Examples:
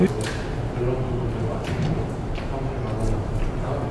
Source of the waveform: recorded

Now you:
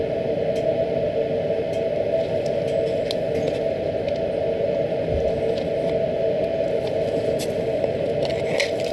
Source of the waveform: recorded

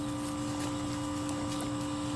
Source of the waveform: recorded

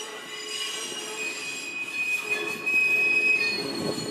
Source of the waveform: recorded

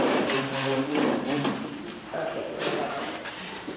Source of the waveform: remade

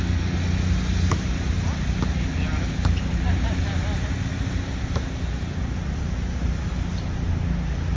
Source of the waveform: recorded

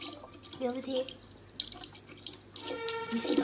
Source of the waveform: recorded